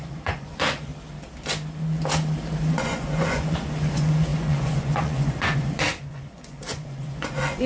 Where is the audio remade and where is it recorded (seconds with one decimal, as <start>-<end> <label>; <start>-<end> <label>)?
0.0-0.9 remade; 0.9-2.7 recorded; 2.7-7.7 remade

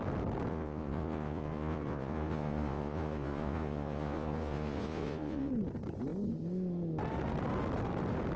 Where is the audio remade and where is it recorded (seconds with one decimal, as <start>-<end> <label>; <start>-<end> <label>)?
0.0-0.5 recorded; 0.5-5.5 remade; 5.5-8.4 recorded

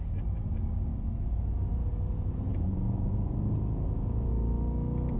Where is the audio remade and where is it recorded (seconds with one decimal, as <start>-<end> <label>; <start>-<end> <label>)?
0.0-2.5 recorded; 2.5-4.3 remade; 4.3-5.2 recorded

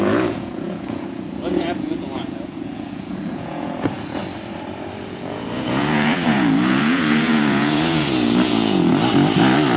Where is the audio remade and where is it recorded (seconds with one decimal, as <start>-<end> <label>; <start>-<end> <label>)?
0.0-4.2 remade; 4.2-5.0 recorded; 5.0-8.9 remade; 8.9-9.8 recorded

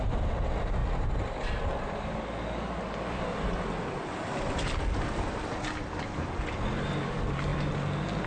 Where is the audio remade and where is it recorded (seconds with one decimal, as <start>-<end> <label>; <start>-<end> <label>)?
0.0-8.3 recorded

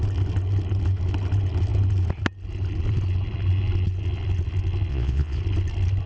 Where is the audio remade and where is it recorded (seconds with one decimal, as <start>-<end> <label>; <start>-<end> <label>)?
0.0-4.9 recorded; 4.9-5.4 remade; 5.4-6.1 recorded